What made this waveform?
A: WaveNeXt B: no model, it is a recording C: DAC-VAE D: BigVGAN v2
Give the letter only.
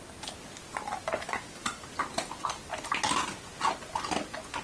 B